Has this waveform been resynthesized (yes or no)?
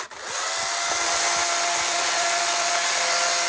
no